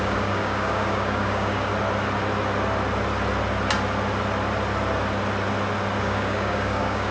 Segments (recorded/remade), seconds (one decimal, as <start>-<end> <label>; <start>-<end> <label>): 0.0-1.7 remade; 1.7-6.0 recorded; 6.0-7.1 remade